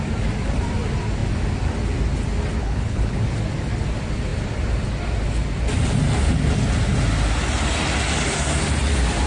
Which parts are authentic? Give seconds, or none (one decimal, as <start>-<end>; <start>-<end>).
0.0-2.6; 3.2-9.3